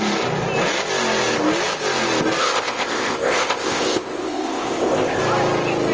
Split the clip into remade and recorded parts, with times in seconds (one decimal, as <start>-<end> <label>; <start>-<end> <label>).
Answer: 0.0-2.4 recorded; 2.4-5.2 remade; 5.2-5.9 recorded